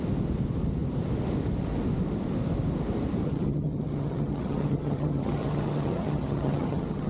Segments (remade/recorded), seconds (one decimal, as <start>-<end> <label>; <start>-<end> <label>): 0.0-3.2 recorded; 3.2-7.1 remade